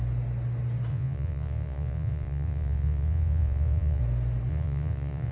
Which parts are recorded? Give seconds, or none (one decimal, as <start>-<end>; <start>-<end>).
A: 0.0-0.9; 4.0-4.5